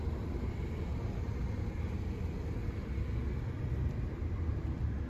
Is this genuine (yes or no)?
yes